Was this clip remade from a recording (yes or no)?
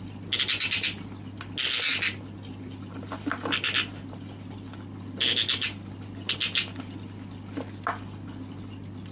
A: no